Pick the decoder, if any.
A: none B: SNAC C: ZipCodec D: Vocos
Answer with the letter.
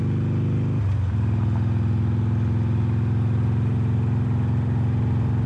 A